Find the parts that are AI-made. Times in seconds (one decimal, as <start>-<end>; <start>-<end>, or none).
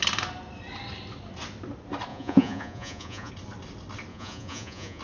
2.1-3.3; 4.1-5.0